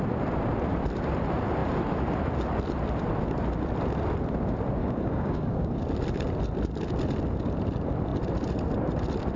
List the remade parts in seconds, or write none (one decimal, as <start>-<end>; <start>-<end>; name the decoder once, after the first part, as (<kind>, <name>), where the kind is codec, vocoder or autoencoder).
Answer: 4.8-5.8 (codec, DAC)